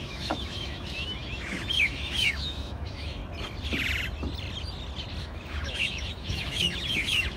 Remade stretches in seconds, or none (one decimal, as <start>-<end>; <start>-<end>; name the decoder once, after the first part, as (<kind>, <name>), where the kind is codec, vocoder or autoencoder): 0.0-3.2 (autoencoder, DAC-VAE); 5.2-7.4

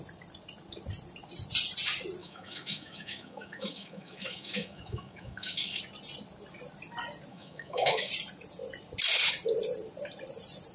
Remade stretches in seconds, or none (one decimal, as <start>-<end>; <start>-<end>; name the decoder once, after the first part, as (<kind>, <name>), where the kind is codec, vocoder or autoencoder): 2.2-5.8 (autoencoder, DAC-VAE); 7.3-8.1

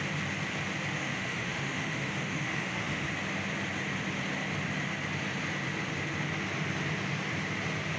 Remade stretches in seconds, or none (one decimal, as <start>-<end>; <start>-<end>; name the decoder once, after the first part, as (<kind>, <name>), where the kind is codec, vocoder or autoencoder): 0.9-3.1 (autoencoder, DAC-VAE)

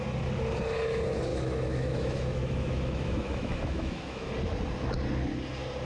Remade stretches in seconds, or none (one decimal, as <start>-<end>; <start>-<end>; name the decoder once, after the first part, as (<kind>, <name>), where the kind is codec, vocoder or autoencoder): 1.3-4.3 (autoencoder, DAC-VAE)